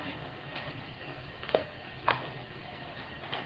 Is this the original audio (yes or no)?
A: no